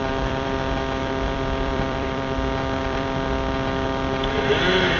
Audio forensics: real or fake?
fake